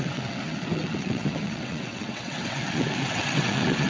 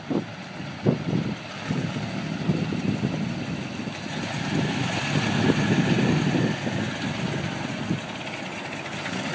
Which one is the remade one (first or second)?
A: first